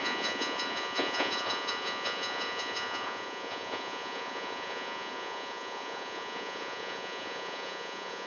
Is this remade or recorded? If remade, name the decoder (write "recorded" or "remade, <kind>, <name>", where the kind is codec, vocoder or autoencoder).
remade, vocoder, Vocos